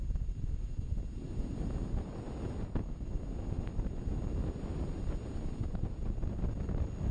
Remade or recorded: recorded